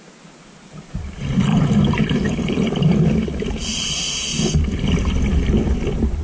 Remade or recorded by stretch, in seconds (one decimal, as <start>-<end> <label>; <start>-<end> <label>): 0.0-1.5 recorded; 1.5-3.9 remade; 3.9-4.3 recorded; 4.3-5.0 remade; 5.0-6.2 recorded